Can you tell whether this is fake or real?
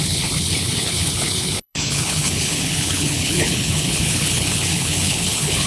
fake